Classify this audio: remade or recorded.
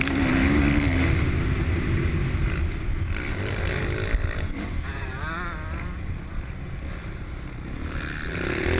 recorded